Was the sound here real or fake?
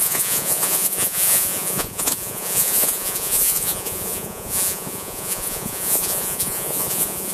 fake